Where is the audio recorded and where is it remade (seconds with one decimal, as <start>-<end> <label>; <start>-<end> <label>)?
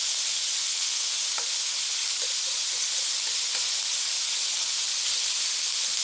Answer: 0.0-0.6 recorded; 0.6-1.2 remade; 1.2-6.0 recorded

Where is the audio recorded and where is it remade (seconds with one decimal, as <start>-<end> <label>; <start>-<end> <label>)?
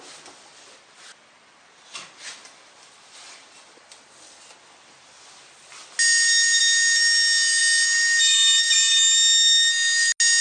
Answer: 0.0-10.4 recorded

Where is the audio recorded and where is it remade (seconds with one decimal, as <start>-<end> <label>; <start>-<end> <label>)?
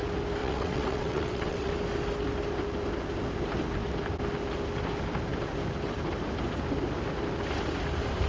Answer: 0.0-0.4 recorded; 0.4-1.7 remade; 1.7-8.3 recorded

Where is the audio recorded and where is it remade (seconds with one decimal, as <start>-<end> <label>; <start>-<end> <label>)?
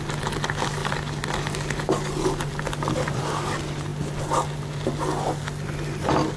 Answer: 0.0-6.4 recorded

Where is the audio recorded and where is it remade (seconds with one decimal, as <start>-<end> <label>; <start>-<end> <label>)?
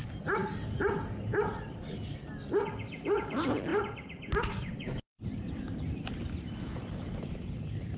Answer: 0.0-8.0 recorded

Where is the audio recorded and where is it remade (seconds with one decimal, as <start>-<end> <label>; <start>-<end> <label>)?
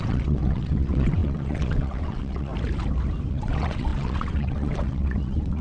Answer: 0.0-2.5 remade; 2.5-3.3 recorded; 3.3-5.6 remade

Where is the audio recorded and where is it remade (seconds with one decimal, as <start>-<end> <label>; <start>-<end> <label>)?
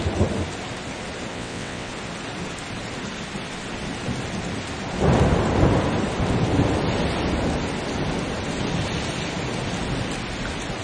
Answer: 0.0-1.3 recorded; 1.3-1.9 remade; 1.9-10.8 recorded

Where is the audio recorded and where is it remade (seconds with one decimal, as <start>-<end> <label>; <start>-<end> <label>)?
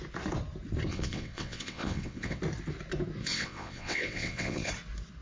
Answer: 0.0-0.9 recorded; 0.9-2.4 remade; 2.4-3.2 recorded; 3.2-4.7 remade; 4.7-5.2 recorded